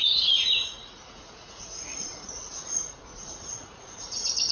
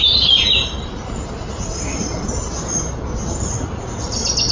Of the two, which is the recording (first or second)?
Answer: second